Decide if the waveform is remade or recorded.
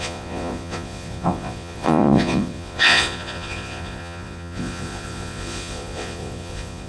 remade